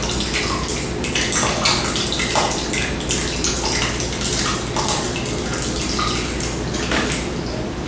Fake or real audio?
real